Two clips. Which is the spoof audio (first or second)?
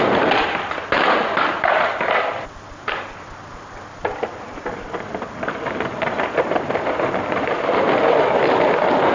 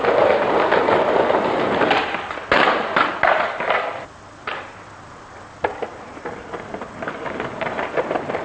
first